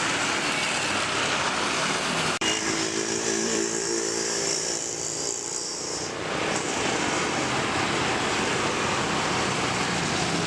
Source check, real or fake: fake